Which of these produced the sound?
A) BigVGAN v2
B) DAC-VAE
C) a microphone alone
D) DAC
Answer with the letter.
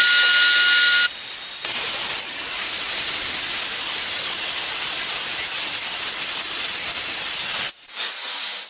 C